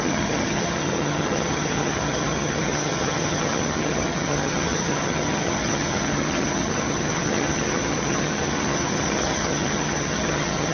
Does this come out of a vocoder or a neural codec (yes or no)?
yes